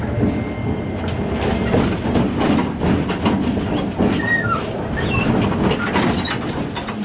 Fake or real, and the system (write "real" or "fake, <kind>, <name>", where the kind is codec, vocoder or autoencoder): real